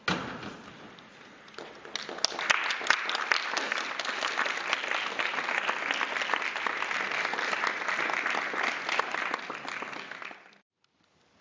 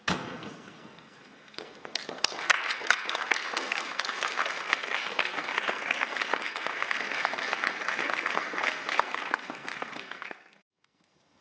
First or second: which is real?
first